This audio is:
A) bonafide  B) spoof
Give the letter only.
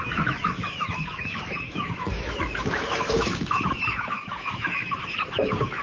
B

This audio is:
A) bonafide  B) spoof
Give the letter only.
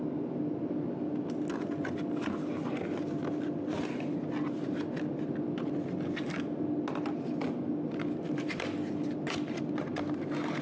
A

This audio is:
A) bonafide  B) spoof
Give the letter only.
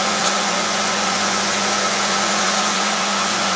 B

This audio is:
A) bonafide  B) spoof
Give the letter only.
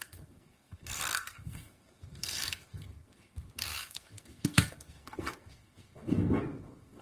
B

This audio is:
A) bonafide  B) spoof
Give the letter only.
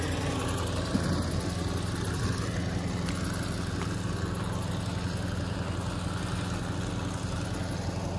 A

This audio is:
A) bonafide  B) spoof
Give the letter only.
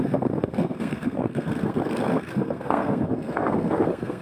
B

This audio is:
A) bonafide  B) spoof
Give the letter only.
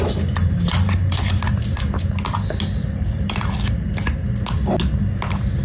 A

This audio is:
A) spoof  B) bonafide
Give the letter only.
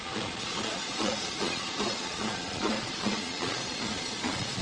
A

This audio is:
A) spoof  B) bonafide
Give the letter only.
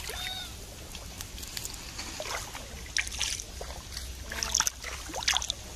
B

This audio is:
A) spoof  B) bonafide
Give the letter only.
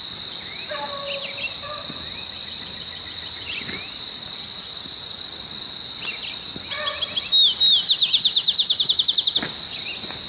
B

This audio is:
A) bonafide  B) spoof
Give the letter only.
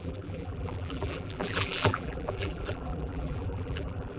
B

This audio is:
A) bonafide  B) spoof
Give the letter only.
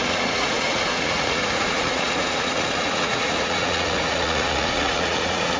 B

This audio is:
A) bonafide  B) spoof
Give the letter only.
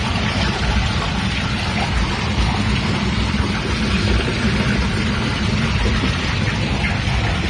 B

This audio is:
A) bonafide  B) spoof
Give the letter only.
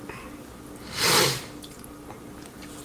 A